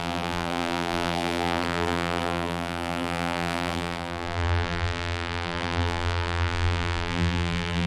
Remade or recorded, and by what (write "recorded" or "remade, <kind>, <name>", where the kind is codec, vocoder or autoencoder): remade, vocoder, BigVGAN v2